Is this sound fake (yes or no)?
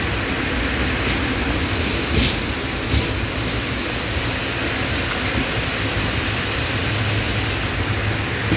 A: no